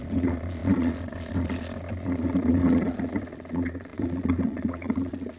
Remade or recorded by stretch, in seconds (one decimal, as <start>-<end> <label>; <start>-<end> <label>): 0.0-5.4 remade